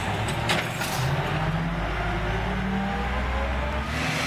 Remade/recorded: recorded